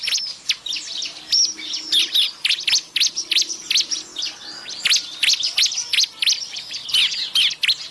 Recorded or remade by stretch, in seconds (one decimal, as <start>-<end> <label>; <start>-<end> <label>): 0.0-7.9 recorded